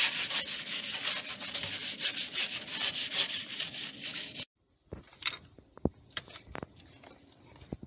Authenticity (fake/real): real